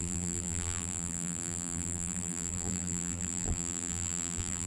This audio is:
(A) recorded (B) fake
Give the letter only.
B